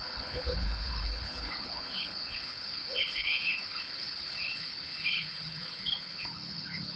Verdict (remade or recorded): remade